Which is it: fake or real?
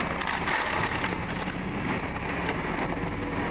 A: real